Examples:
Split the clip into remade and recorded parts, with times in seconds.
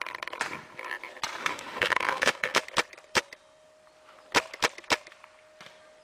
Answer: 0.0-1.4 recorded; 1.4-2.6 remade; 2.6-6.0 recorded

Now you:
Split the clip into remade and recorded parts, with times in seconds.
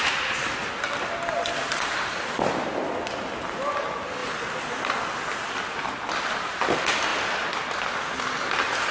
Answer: 0.0-8.9 recorded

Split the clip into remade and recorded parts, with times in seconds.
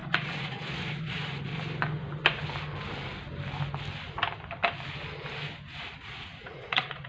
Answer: 0.0-1.5 remade; 1.5-5.8 recorded; 5.8-7.1 remade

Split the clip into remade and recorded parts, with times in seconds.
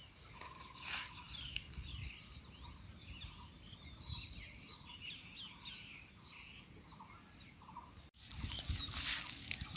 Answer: 0.0-9.8 recorded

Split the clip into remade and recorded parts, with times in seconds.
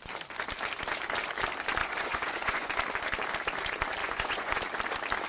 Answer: 0.0-1.8 recorded; 1.8-2.7 remade; 2.7-4.0 recorded; 4.0-4.6 remade; 4.6-5.3 recorded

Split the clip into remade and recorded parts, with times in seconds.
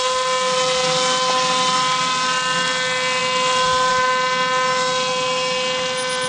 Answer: 0.0-6.3 recorded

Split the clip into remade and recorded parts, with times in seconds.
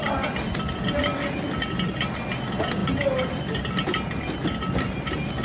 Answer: 0.0-5.4 recorded